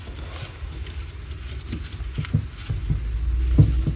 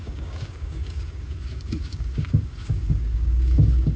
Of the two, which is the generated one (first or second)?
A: second